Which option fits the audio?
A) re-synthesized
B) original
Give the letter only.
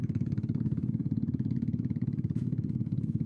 A